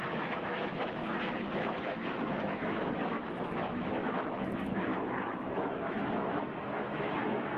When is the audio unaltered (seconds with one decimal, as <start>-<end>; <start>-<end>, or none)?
4.9-5.6